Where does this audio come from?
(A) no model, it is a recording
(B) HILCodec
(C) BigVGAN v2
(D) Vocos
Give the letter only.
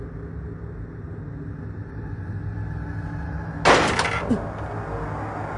A